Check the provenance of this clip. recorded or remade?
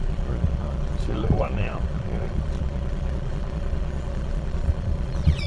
remade